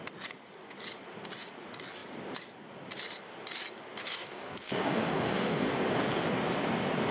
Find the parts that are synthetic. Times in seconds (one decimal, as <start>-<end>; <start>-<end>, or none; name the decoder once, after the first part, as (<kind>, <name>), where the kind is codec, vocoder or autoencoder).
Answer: 4.0-5.7 (codec, DAC)